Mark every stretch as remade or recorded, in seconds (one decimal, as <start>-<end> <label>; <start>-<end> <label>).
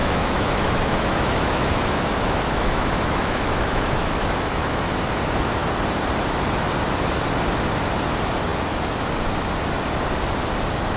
0.0-4.8 remade; 4.8-11.0 recorded